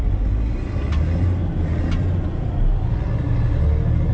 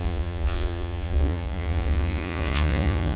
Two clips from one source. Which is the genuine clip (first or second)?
first